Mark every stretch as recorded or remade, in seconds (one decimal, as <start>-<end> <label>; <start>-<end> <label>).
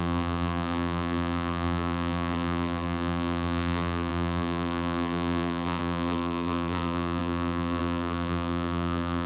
0.0-9.3 remade